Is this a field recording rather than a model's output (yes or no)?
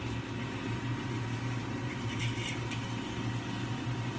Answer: yes